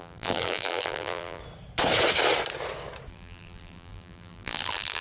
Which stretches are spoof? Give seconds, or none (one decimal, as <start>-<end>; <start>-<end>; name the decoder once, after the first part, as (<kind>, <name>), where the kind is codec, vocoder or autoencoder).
0.0-1.4 (vocoder, BigVGAN v2); 3.1-5.0

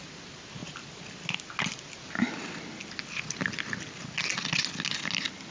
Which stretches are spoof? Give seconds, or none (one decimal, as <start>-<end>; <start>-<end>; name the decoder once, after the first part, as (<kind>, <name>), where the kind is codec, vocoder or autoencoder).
none

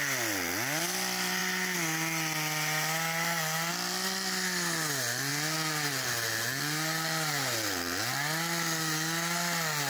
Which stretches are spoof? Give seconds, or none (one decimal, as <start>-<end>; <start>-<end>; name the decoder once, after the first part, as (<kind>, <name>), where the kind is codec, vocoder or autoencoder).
none

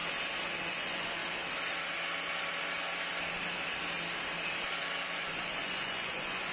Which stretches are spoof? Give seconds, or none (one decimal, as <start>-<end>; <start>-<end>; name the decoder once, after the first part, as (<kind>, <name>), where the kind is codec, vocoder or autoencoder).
0.6-1.2 (vocoder, Vocos); 5.1-6.5

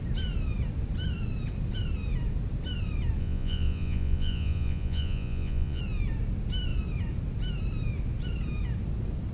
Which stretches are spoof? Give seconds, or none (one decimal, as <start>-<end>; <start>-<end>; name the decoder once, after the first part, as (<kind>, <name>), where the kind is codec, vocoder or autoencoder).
3.2-5.8 (vocoder, Vocos)

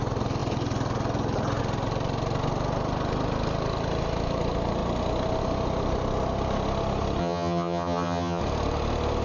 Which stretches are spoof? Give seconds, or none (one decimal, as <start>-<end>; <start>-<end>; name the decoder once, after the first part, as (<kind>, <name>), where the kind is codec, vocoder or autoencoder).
7.2-8.4 (vocoder, HiFi-GAN)

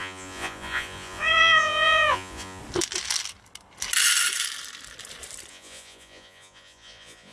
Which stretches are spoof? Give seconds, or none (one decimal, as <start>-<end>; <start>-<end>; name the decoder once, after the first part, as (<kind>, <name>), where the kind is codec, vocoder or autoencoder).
0.0-2.6 (vocoder, Vocos); 5.5-7.3

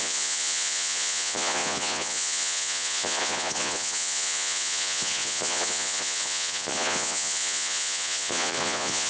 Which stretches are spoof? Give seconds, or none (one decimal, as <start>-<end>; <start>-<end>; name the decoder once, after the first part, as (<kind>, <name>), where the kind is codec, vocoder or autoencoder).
0.0-9.1 (vocoder, Vocos)